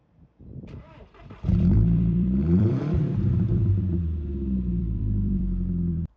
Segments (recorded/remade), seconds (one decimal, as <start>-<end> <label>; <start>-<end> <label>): 0.0-6.2 remade